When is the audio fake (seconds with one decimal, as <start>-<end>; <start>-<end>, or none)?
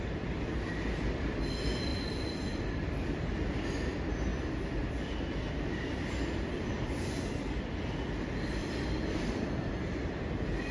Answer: 1.9-2.9; 4.3-7.2; 8.6-9.7